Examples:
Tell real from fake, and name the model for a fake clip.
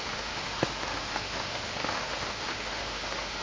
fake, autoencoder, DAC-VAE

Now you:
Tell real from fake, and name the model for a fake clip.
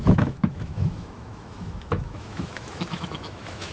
fake, autoencoder, DAC-VAE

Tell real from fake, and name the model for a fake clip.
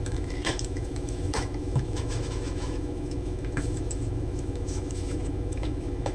fake, autoencoder, DAC-VAE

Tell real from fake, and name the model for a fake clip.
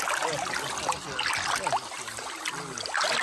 real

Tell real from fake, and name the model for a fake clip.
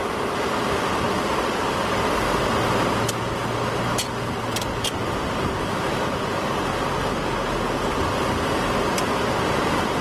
real